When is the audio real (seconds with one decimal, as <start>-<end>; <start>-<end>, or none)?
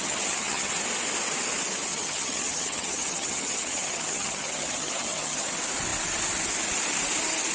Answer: 0.7-1.9; 5.5-7.5